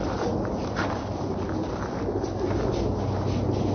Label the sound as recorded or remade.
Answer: recorded